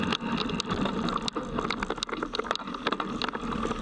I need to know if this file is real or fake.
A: real